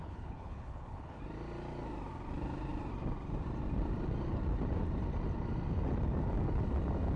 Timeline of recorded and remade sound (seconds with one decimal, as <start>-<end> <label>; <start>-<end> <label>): 0.0-1.2 remade; 1.2-7.2 recorded